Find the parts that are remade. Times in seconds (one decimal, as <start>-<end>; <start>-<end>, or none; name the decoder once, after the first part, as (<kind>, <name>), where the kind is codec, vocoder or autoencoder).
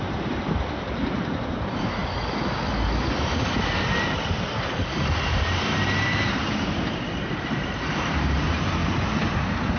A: 0.0-2.0 (vocoder, BigVGAN v2); 4.9-8.8